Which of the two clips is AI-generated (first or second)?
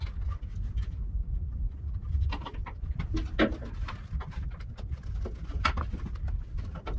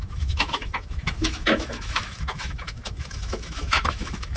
second